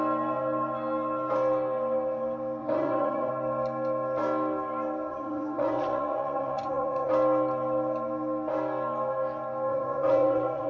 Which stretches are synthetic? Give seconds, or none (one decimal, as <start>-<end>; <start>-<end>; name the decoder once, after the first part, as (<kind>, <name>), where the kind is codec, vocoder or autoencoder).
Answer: 2.6-3.3 (vocoder, Vocos); 5.1-7.1; 9.7-10.7

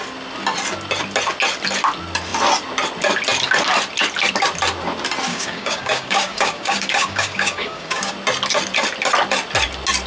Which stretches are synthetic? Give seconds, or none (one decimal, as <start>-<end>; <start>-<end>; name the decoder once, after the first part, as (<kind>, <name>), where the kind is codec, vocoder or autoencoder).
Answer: 5.3-8.1 (codec, DAC)